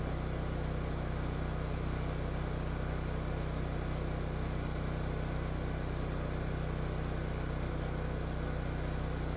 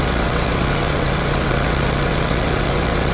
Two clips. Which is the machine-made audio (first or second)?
second